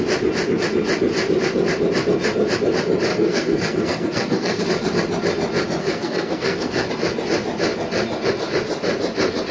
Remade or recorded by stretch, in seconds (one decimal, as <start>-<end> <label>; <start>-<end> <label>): 0.0-3.1 recorded; 3.1-4.6 remade; 4.6-5.8 recorded; 5.8-6.9 remade; 6.9-9.5 recorded